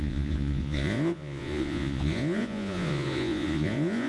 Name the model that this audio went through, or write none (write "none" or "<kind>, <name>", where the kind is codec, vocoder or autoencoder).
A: vocoder, Vocos